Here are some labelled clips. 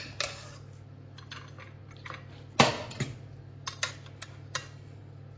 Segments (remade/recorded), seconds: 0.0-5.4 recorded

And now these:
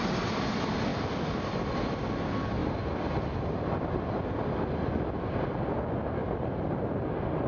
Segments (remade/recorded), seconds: 0.0-7.5 recorded